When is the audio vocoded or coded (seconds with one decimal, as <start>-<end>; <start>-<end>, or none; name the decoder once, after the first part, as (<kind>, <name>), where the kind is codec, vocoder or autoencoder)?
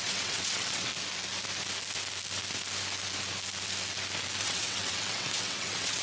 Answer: 0.0-0.9 (vocoder, WaveNeXt); 4.4-6.0